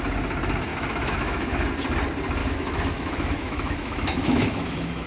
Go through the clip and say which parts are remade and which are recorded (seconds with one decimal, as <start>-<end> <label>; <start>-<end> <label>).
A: 0.0-0.7 recorded; 0.7-1.7 remade; 1.7-2.4 recorded; 2.4-5.1 remade